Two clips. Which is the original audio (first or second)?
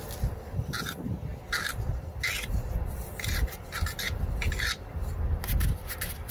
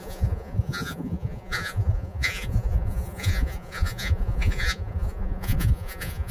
first